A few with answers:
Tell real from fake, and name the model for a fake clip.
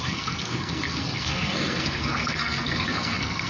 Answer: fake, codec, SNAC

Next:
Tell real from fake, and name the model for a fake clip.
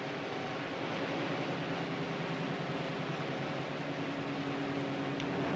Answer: real